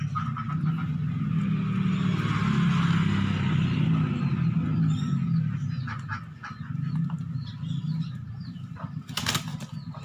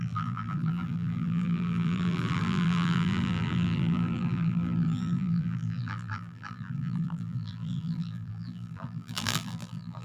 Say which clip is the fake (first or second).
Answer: second